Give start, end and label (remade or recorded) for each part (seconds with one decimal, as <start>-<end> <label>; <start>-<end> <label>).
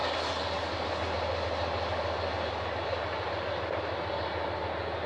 0.0-5.1 recorded